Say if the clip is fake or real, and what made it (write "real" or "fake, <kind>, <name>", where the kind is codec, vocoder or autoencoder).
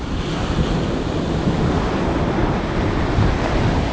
real